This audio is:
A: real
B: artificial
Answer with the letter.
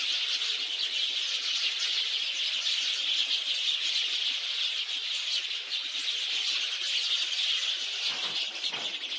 A